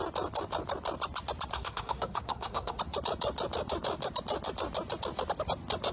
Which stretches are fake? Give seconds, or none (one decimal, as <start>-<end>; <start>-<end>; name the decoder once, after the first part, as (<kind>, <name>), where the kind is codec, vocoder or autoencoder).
1.5-2.8 (codec, SNAC)